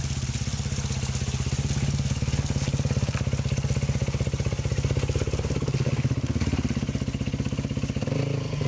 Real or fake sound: real